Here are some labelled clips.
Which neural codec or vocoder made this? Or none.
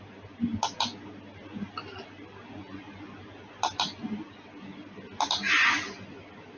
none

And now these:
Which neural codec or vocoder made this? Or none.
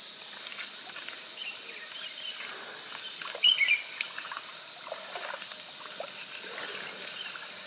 none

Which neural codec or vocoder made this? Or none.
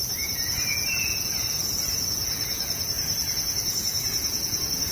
vocoder, Vocos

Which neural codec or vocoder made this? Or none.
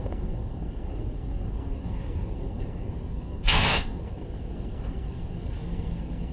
codec, SNAC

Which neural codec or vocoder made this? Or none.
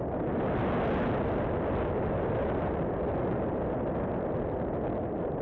none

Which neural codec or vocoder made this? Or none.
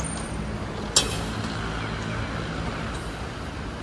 none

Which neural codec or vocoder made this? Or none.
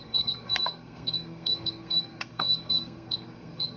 codec, SNAC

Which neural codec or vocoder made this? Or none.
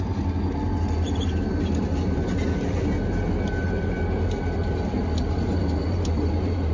none